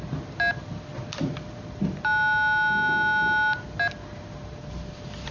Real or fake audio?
real